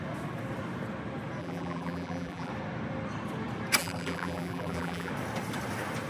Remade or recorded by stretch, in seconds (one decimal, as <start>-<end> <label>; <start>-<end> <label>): 0.0-1.4 recorded; 1.4-2.5 remade; 2.5-3.8 recorded; 3.8-5.1 remade; 5.1-6.1 recorded